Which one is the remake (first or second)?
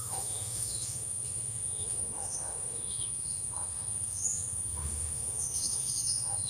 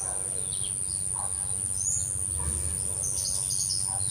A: first